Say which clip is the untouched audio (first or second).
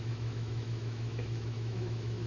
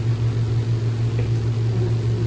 second